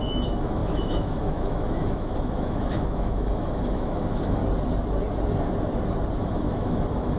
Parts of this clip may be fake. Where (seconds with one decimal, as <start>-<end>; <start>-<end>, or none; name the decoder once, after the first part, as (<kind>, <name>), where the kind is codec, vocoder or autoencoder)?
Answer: 0.0-4.4 (autoencoder, DAC-VAE); 6.2-7.2